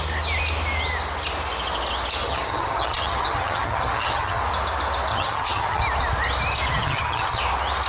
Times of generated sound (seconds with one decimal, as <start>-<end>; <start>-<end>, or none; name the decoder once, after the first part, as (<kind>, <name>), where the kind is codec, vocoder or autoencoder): 2.2-4.4 (vocoder, HiFi-GAN); 5.1-5.8; 6.8-7.4